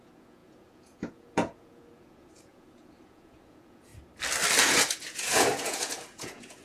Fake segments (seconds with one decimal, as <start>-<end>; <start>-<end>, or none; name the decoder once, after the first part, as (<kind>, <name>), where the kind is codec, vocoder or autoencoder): 0.0-3.9 (vocoder, Vocos); 4.6-6.6